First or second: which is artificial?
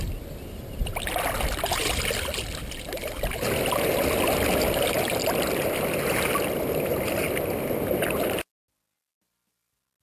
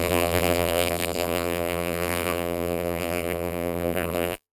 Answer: second